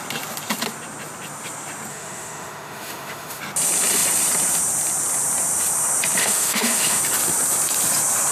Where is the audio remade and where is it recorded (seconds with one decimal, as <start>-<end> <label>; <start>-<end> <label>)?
0.0-1.9 recorded; 1.9-3.4 remade; 3.4-6.2 recorded; 6.2-7.0 remade; 7.0-8.3 recorded